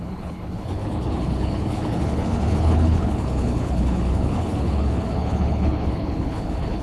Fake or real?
fake